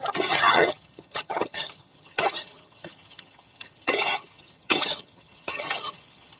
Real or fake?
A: fake